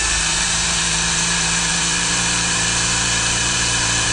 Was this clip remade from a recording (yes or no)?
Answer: yes